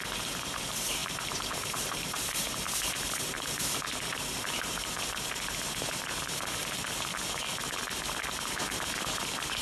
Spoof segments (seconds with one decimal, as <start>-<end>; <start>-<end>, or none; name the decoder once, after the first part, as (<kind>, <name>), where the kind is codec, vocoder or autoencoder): 0.0-6.6 (vocoder, BigVGAN v2); 8.4-9.6